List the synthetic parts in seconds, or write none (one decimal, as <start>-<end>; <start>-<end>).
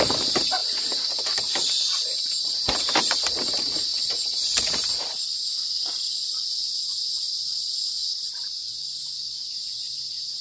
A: 0.0-0.6; 3.0-3.9; 6.5-10.4